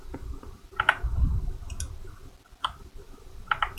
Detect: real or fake real